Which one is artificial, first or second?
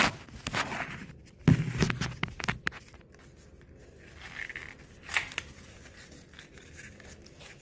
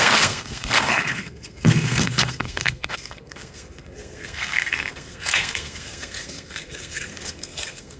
second